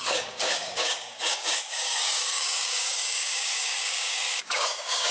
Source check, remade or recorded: remade